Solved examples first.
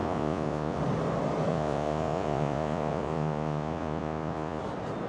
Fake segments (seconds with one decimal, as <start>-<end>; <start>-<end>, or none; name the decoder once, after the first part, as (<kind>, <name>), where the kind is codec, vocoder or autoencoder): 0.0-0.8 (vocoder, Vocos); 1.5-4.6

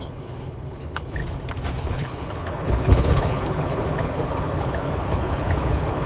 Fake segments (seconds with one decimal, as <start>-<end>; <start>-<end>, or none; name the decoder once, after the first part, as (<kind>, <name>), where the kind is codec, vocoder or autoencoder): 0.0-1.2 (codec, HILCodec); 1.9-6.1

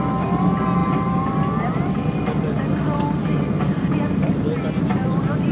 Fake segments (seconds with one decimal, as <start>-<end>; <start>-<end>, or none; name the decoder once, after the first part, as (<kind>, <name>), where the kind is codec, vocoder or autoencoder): none

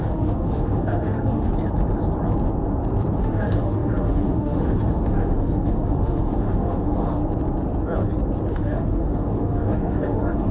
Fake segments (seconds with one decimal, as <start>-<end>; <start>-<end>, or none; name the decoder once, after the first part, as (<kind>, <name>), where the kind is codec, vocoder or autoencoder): 0.0-1.5 (autoencoder, DAC-VAE); 3.2-7.2; 8.5-10.5

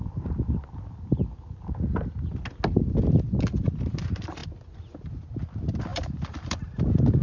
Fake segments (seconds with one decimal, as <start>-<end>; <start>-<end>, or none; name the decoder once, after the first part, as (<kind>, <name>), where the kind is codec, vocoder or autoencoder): 5.9-6.8 (vocoder, BigVGAN v2)